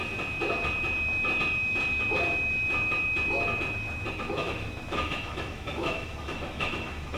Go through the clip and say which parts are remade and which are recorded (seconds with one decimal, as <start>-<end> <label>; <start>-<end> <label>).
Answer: 0.0-4.1 recorded; 4.1-7.2 remade